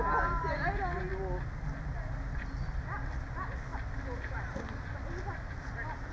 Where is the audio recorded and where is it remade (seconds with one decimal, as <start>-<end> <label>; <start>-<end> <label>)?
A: 0.0-6.1 recorded